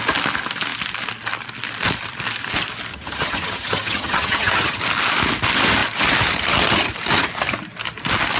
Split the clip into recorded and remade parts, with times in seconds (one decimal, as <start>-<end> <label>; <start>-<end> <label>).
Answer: 0.0-2.9 recorded; 2.9-4.8 remade; 4.8-8.4 recorded